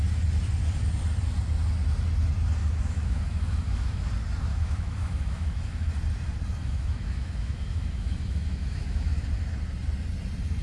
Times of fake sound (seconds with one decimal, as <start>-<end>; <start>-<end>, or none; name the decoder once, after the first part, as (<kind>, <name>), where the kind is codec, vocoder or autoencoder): 2.6-4.1 (autoencoder, DAC-VAE); 4.5-5.9; 6.6-9.2